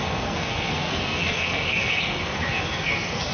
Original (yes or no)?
no